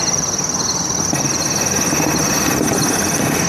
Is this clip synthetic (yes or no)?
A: no